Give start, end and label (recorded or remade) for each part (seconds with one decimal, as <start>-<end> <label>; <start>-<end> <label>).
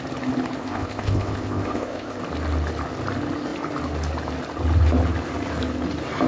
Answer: 0.0-0.6 recorded; 0.6-2.2 remade; 2.2-6.3 recorded